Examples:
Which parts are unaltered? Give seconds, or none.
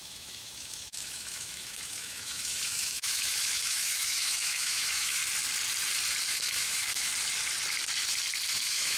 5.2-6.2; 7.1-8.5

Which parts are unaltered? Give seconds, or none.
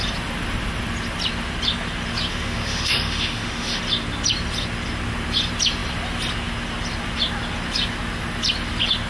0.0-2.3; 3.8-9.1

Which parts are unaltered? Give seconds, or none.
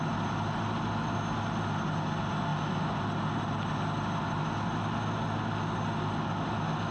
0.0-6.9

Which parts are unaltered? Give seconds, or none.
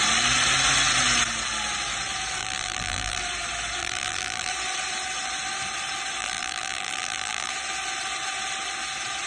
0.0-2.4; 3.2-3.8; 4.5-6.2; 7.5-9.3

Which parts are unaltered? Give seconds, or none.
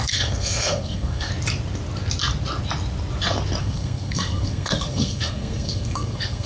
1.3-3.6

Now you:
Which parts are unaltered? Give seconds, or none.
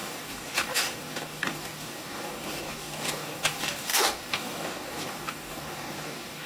none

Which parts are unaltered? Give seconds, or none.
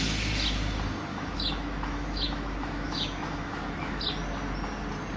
0.0-1.1; 4.0-5.2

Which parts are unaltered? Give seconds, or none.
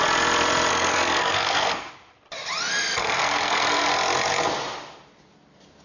0.0-0.7; 1.9-3.0; 3.9-5.8